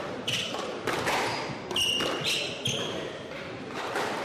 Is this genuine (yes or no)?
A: yes